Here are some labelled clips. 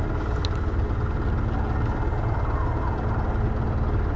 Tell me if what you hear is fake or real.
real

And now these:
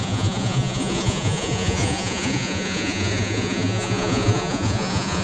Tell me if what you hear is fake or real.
fake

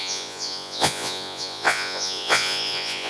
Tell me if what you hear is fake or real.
fake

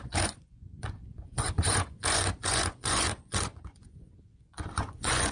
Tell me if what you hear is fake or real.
fake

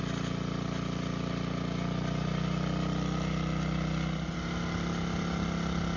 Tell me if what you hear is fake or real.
real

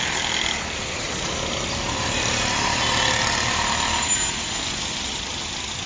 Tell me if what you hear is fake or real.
real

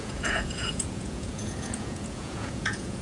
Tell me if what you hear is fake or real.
fake